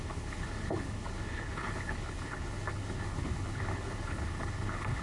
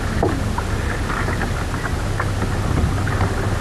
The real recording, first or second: second